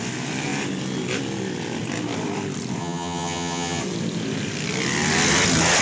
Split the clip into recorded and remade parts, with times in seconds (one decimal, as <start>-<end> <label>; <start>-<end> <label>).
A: 0.0-2.8 recorded; 2.8-3.8 remade; 3.8-5.8 recorded